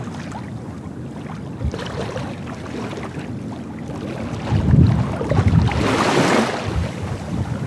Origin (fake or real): real